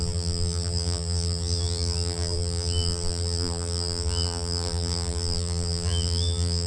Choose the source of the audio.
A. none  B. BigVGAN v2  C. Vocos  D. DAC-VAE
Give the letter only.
B